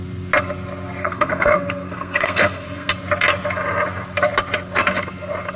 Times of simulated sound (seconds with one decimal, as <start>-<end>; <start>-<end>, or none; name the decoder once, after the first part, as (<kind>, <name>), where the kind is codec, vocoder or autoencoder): 1.0-2.9 (codec, SNAC)